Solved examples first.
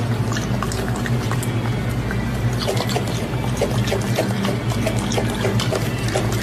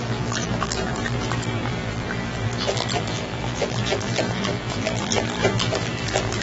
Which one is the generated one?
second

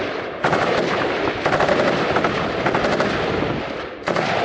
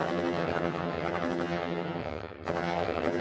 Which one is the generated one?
second